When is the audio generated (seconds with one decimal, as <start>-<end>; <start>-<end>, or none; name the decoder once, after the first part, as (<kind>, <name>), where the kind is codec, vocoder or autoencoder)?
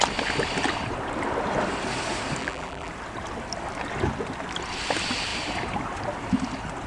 2.4-2.9 (vocoder, BigVGAN v2)